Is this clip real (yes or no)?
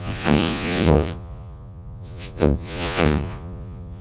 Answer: no